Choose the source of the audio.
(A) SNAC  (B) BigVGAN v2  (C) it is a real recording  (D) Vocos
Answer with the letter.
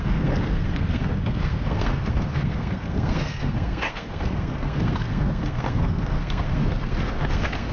A